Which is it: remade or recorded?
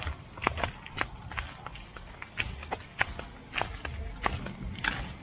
recorded